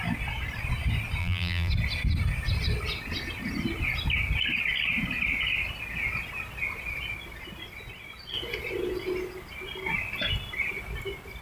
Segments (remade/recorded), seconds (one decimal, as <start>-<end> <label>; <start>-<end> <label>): 0.0-1.2 recorded; 1.2-1.7 remade; 1.7-11.4 recorded